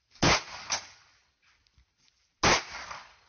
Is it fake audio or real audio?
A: real